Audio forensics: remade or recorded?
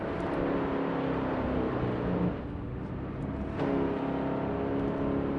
recorded